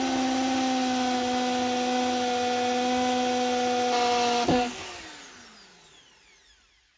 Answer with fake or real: real